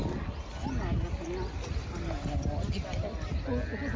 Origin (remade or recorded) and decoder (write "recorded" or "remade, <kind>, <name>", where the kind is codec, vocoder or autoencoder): recorded